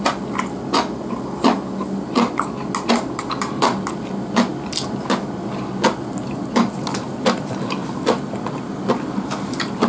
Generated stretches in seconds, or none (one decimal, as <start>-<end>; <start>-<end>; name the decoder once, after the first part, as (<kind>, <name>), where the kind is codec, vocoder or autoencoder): none